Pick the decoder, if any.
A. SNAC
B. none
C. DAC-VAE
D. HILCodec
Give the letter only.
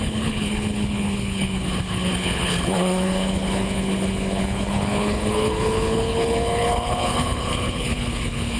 D